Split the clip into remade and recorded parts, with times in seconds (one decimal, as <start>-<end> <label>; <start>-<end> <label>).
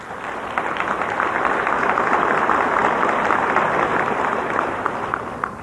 0.0-5.6 remade